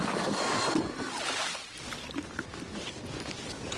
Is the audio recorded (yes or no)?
yes